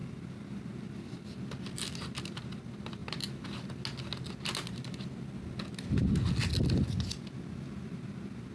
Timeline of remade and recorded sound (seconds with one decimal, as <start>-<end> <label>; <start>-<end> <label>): 0.0-8.5 recorded